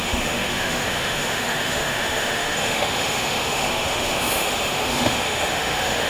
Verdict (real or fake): fake